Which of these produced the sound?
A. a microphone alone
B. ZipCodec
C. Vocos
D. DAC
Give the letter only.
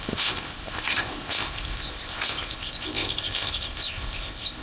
B